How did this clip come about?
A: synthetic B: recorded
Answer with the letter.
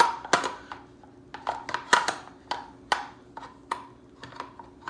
B